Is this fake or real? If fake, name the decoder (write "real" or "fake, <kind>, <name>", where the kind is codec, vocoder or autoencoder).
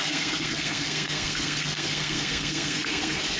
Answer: fake, codec, SNAC